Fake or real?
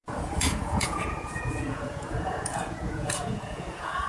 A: fake